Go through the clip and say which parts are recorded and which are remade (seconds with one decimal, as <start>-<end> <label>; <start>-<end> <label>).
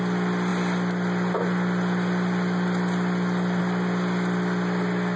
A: 0.0-5.2 recorded